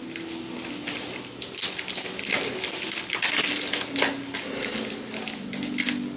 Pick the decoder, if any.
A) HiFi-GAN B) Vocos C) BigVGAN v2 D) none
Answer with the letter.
D